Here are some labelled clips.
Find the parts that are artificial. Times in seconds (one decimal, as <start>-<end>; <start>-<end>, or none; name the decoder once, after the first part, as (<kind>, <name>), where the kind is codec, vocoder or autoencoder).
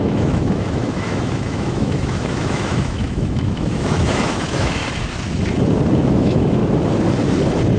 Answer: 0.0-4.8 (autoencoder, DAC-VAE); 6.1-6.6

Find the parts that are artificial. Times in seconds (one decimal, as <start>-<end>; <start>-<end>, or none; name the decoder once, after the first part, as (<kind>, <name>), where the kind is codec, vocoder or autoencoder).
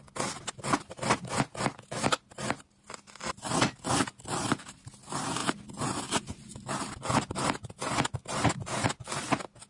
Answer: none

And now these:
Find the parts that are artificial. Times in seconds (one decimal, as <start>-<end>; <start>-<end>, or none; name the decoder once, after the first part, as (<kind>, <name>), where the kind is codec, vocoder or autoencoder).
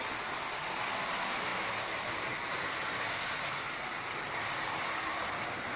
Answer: none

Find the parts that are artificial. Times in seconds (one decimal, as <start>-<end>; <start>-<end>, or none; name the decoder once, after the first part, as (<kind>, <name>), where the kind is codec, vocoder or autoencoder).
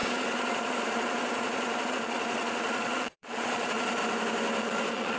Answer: 0.0-4.0 (vocoder, Vocos); 4.6-5.2